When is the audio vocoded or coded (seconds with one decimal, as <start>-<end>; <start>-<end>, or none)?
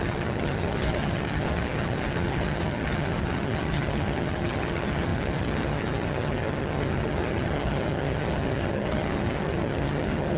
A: 0.0-10.4